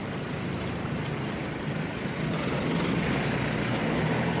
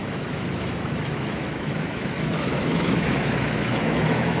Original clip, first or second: first